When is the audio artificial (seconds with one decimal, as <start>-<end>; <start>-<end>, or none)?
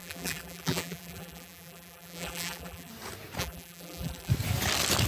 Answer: 0.0-2.9; 3.4-4.3